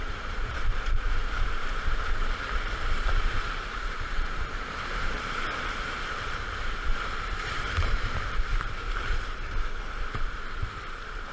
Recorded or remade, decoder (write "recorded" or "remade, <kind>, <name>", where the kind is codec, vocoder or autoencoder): remade, vocoder, BigVGAN v2